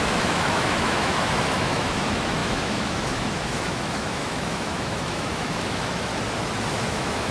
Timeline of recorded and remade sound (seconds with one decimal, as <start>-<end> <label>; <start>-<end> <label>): 0.0-6.1 remade; 6.1-6.7 recorded; 6.7-7.3 remade